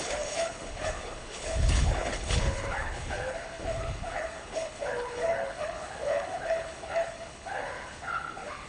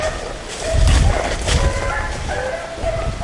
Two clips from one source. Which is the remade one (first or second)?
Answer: first